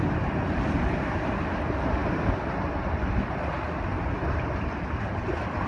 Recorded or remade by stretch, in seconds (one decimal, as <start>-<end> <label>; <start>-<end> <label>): 0.0-5.7 recorded